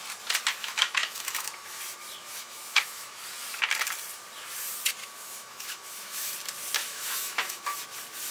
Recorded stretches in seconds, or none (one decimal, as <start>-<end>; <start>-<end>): 0.0-0.6; 1.8-2.2; 3.2-5.0; 6.3-6.8; 7.8-8.3